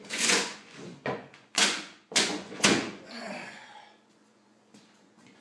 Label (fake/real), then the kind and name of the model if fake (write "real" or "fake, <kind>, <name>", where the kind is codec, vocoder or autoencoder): fake, vocoder, Vocos